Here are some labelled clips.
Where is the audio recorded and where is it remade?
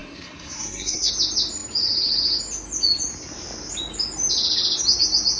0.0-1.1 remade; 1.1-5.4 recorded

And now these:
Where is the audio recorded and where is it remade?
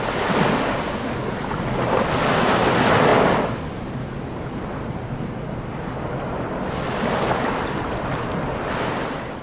0.0-9.4 recorded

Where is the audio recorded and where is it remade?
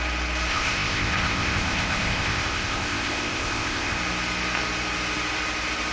0.0-0.5 recorded; 0.5-4.0 remade; 4.0-5.9 recorded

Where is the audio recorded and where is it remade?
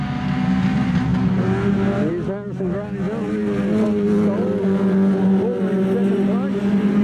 0.0-7.0 recorded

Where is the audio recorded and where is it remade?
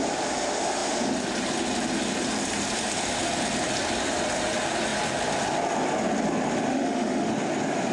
0.0-6.7 recorded; 6.7-7.3 remade; 7.3-7.9 recorded